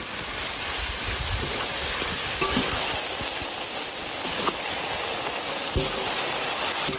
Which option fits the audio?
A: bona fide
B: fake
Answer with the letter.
A